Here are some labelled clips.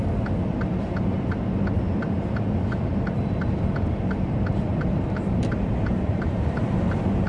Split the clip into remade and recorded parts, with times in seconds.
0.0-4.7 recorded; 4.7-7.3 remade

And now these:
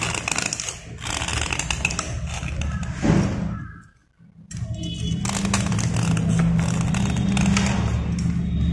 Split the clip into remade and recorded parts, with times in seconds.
0.0-1.3 recorded; 1.3-4.1 remade; 4.1-8.7 recorded

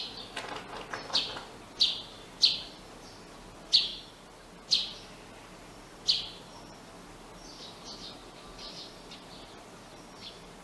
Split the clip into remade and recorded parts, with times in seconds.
0.0-10.6 recorded